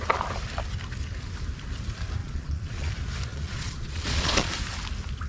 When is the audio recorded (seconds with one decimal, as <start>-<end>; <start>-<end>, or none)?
0.0-2.2; 2.9-3.3; 4.5-5.3